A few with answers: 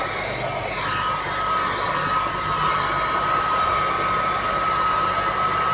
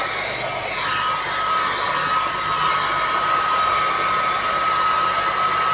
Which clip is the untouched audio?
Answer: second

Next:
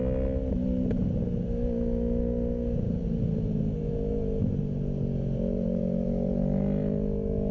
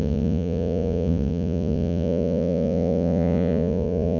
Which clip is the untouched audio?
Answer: first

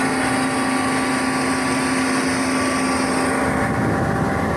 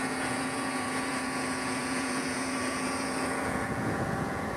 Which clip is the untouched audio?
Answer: first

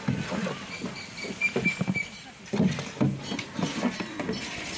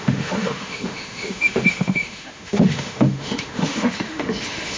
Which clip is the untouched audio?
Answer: first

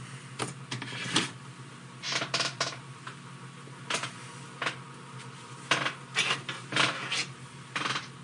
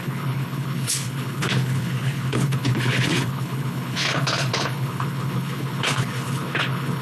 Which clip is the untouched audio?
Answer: first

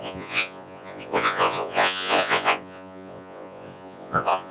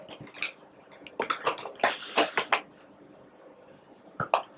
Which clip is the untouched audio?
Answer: second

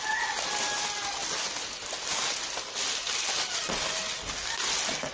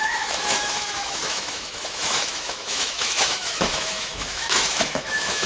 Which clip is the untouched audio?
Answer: first